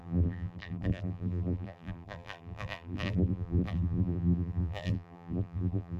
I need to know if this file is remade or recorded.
remade